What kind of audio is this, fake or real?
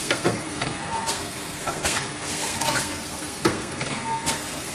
fake